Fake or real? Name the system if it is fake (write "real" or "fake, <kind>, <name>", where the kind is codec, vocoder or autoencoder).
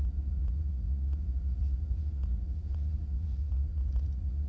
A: fake, vocoder, Vocos